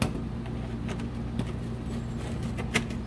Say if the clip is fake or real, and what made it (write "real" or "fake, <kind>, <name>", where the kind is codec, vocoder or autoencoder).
real